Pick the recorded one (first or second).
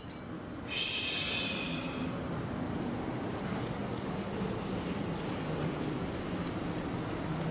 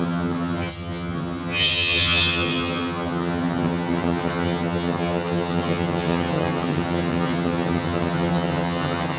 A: first